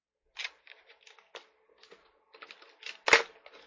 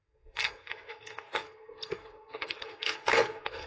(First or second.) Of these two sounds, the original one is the first